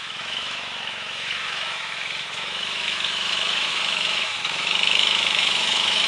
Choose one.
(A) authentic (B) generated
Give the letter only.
B